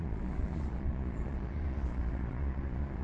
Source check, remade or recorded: remade